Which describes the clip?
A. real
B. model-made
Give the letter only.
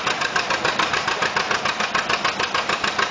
A